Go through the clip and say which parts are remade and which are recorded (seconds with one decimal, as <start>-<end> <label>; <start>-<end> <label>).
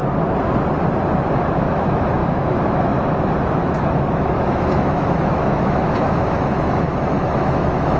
0.0-1.5 recorded; 1.5-8.0 remade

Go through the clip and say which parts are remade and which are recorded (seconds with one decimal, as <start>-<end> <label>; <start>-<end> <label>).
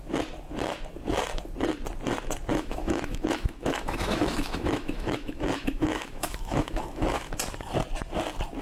0.0-2.5 recorded; 2.5-7.3 remade; 7.3-8.6 recorded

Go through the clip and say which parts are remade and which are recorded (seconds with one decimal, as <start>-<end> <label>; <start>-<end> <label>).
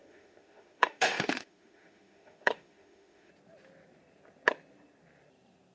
0.0-3.3 remade; 3.3-5.7 recorded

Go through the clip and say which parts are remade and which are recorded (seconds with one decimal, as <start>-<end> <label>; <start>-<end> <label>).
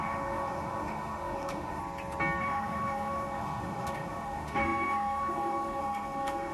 0.0-1.8 remade; 1.8-2.4 recorded; 2.4-6.5 remade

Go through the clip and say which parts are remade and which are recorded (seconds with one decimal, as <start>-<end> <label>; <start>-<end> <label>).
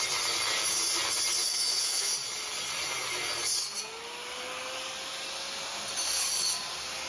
0.0-1.4 recorded; 1.4-2.1 remade; 2.1-7.1 recorded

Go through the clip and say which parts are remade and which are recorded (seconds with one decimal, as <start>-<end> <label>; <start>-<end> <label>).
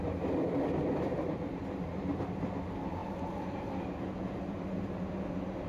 0.0-5.7 recorded